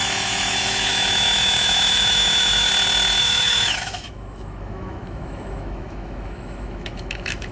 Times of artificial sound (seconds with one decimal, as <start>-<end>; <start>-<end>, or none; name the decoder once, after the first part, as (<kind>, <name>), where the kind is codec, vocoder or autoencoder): 0.0-2.7 (autoencoder, DAC-VAE); 3.2-7.5

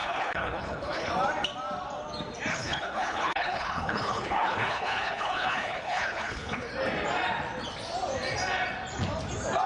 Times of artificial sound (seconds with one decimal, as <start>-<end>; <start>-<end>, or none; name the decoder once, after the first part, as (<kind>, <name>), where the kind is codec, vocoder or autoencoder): 0.0-1.1 (codec, HILCodec); 2.5-6.7

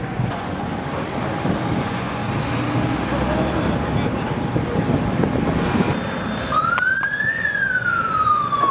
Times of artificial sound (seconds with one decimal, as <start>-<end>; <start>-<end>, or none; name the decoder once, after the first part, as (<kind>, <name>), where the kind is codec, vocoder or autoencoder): 0.0-0.7 (vocoder, Vocos); 1.8-2.2; 7.0-8.7

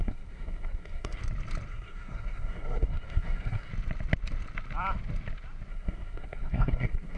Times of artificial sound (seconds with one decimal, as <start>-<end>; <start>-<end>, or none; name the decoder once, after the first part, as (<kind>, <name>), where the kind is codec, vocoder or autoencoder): 0.0-1.2 (codec, SNAC); 1.7-3.7; 5.7-7.2

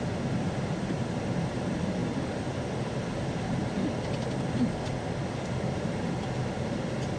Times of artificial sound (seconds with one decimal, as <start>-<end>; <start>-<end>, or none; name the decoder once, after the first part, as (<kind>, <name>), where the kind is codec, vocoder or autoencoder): 0.0-3.6 (vocoder, BigVGAN v2); 4.5-7.2

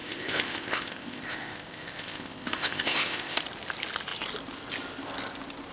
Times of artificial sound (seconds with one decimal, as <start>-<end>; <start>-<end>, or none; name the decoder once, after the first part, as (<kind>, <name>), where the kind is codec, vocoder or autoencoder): 0.0-3.4 (codec, ZipCodec)